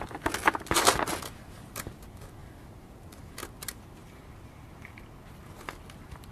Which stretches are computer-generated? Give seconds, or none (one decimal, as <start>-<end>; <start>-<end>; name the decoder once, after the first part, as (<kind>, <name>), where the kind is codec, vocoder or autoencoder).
2.4-3.4 (vocoder, BigVGAN v2)